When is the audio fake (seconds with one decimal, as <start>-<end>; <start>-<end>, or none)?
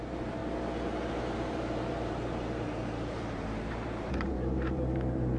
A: 0.0-0.4; 1.1-5.4